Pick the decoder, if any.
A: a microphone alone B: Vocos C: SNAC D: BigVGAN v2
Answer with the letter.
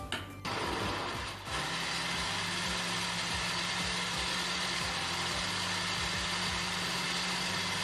A